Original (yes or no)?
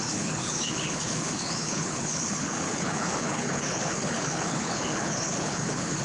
no